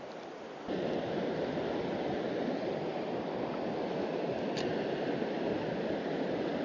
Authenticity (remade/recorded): recorded